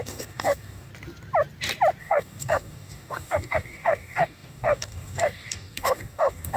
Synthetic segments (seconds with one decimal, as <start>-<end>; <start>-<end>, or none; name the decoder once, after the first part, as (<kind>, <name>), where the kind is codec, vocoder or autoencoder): 0.0-0.9 (codec, DAC); 2.0-6.6